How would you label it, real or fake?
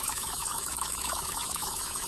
fake